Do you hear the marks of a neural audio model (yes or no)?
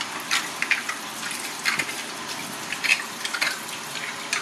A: no